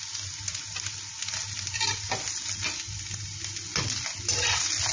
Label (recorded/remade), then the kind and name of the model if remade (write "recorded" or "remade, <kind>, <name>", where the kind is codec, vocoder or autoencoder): recorded